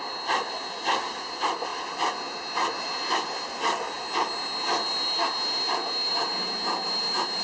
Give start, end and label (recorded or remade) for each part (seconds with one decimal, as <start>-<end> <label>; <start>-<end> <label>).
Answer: 0.0-7.4 recorded